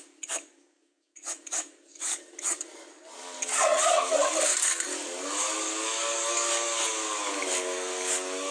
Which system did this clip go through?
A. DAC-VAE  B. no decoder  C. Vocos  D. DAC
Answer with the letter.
D